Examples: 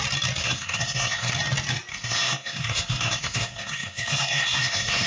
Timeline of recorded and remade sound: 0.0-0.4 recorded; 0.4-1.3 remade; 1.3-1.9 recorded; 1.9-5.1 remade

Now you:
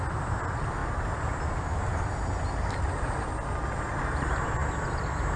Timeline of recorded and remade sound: 0.0-5.4 recorded

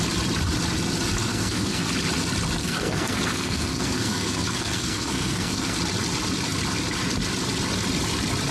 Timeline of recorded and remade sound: 0.0-1.3 recorded; 1.3-1.9 remade; 1.9-2.6 recorded; 2.6-5.8 remade; 5.8-8.5 recorded

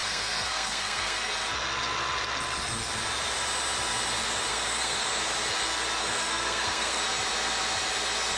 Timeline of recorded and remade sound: 0.0-1.3 remade; 1.3-4.5 recorded; 4.5-5.1 remade; 5.1-6.0 recorded; 6.0-7.0 remade; 7.0-8.4 recorded

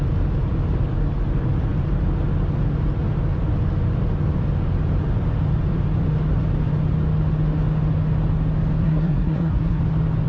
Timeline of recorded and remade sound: 0.0-8.8 recorded; 8.8-9.8 remade; 9.8-10.3 recorded

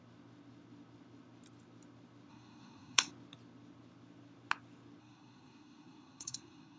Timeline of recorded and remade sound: 0.0-2.3 recorded; 2.3-3.1 remade; 3.1-5.0 recorded; 5.0-6.8 remade